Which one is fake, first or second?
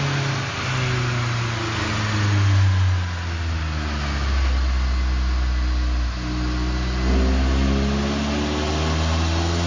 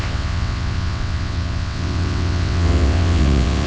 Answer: second